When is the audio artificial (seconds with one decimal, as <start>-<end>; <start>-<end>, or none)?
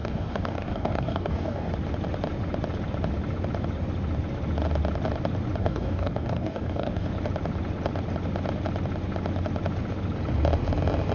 0.0-1.7; 5.6-7.1